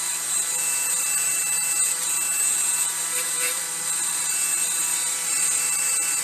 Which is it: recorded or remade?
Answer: remade